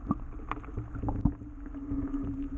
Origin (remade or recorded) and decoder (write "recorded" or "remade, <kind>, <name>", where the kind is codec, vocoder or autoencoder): recorded